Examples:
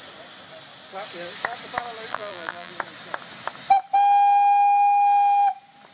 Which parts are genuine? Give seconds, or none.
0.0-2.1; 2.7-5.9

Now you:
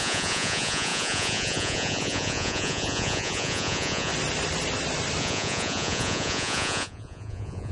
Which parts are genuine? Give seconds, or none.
4.1-5.2

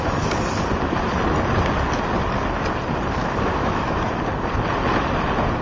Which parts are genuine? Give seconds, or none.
0.0-3.2; 4.1-5.6